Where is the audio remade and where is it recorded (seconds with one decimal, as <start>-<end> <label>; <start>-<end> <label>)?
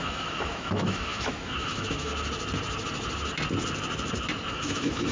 0.0-2.1 remade; 2.1-4.5 recorded; 4.5-5.1 remade